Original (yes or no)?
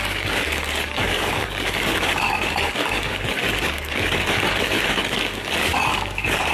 no